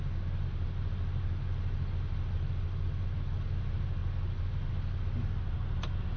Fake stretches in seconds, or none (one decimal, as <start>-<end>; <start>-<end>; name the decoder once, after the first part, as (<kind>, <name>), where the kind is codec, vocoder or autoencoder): none